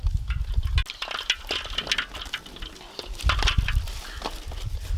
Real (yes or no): yes